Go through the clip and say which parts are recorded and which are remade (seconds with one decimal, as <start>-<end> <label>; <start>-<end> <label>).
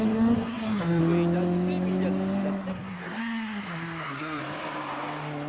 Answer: 0.0-1.0 remade; 1.0-2.7 recorded; 2.7-4.4 remade; 4.4-5.5 recorded